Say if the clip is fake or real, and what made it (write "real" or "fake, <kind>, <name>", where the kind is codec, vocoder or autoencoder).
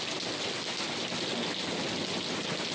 real